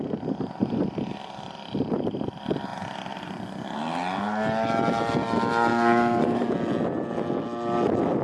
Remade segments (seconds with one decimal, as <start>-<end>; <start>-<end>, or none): 5.7-6.5